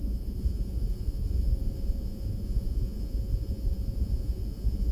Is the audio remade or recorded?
remade